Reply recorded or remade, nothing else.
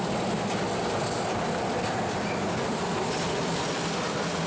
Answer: remade